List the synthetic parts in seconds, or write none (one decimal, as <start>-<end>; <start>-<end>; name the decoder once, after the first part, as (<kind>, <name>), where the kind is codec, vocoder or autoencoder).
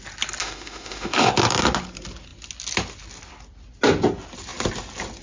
0.4-1.3 (autoencoder, DAC-VAE)